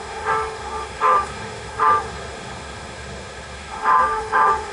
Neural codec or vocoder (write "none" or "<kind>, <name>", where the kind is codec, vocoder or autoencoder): autoencoder, DAC-VAE